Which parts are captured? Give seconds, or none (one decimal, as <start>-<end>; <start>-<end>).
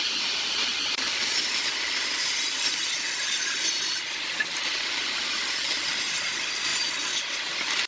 0.0-7.9